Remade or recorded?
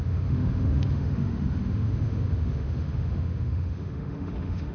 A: remade